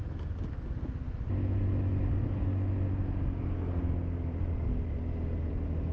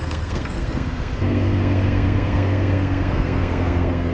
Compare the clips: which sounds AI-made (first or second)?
second